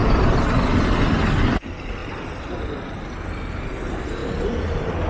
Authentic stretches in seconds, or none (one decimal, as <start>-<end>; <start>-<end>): 0.0-5.1